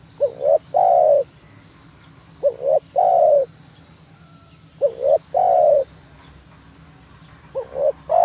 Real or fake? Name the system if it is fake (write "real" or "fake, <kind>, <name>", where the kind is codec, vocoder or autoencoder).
real